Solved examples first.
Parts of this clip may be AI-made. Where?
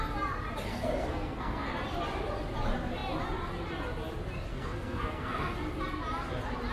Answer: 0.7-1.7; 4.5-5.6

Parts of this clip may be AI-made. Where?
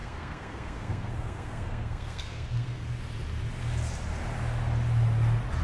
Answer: 0.0-3.0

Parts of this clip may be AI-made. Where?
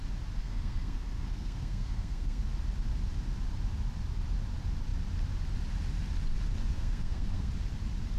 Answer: 0.4-2.4; 6.7-7.5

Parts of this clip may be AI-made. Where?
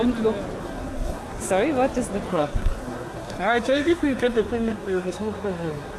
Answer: 0.6-1.5; 2.3-6.0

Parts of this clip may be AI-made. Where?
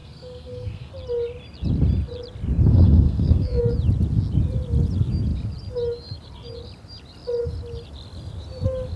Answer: 0.0-0.9; 2.7-3.6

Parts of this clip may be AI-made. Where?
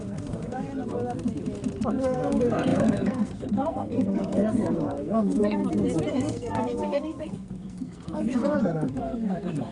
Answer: 0.0-0.7; 1.9-5.6; 6.1-9.7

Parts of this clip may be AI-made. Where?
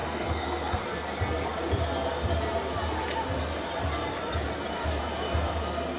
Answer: 0.0-0.8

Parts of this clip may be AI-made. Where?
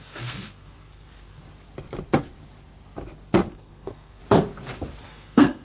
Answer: 0.0-1.4; 3.5-4.2; 5.0-5.6